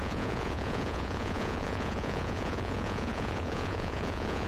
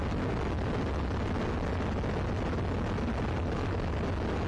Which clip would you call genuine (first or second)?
second